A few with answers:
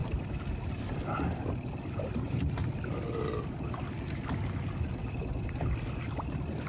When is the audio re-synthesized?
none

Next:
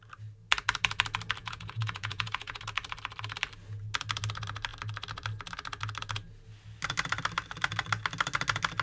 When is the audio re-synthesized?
1.4-2.6 (vocoder, Vocos)

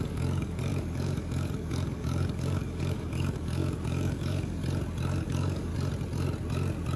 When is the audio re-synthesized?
0.0-4.6 (codec, DAC); 5.2-5.7

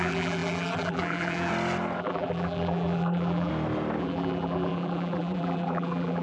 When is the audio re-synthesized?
0.0-1.5 (vocoder, BigVGAN v2); 2.0-3.5; 4.0-6.2

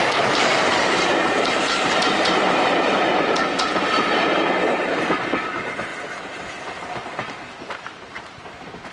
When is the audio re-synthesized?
0.0-5.9 (vocoder, BigVGAN v2); 7.5-8.9

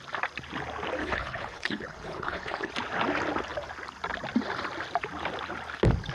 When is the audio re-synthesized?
1.0-2.7 (codec, HILCodec)

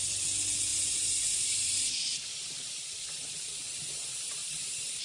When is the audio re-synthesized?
0.7-2.8 (vocoder, BigVGAN v2); 4.4-5.0